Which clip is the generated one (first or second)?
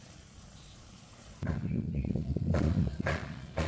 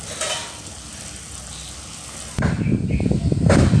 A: first